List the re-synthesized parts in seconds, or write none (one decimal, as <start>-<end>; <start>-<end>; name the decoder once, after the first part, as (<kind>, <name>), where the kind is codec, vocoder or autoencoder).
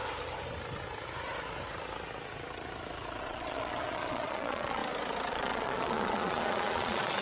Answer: 3.2-4.8 (vocoder, Vocos); 5.3-7.2